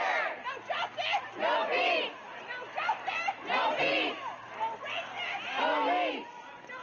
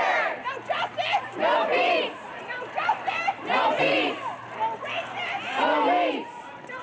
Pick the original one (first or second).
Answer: first